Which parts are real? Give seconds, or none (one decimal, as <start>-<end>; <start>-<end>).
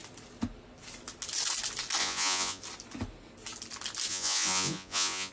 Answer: 0.0-2.0; 2.6-4.1